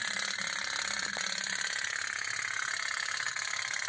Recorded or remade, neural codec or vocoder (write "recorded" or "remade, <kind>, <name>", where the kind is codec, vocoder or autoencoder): recorded